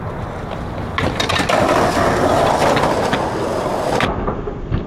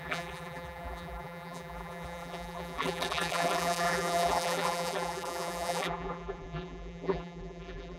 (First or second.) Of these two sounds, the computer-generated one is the second